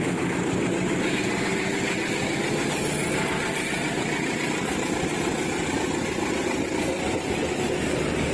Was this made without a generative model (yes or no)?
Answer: yes